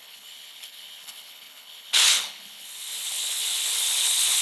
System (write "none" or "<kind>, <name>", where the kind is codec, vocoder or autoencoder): codec, HILCodec